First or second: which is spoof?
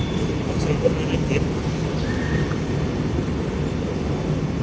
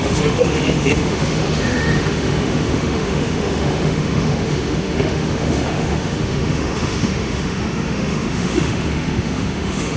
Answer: second